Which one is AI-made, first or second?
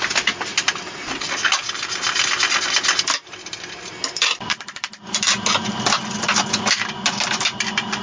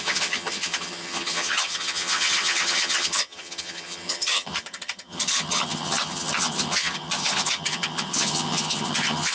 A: second